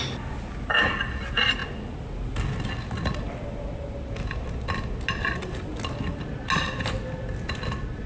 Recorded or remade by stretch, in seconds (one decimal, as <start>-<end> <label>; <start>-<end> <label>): 0.0-8.1 recorded